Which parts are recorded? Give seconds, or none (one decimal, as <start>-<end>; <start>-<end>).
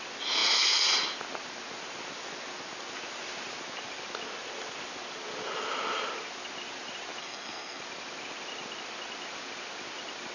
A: 0.0-7.2; 7.8-10.3